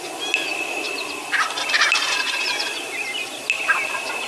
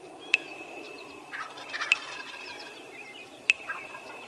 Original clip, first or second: first